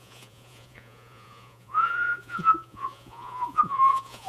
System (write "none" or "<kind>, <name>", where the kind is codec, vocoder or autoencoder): vocoder, Vocos